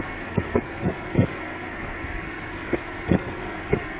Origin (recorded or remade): remade